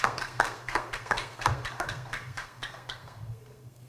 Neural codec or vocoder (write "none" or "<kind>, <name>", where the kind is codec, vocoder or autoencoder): codec, SNAC